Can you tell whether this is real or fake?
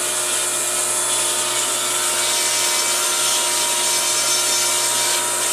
real